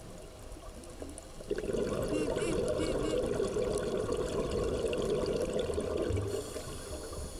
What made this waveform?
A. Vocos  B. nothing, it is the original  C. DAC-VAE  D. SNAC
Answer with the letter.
B